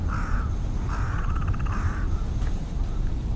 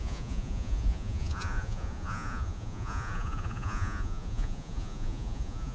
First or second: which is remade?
second